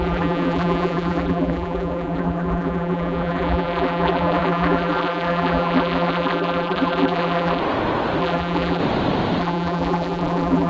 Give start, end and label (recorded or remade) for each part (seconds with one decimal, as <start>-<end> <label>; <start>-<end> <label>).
0.0-7.6 remade; 7.6-8.2 recorded; 8.2-8.8 remade; 8.8-9.4 recorded; 9.4-10.7 remade